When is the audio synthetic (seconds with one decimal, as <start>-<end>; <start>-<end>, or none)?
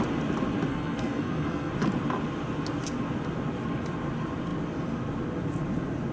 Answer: 0.7-1.7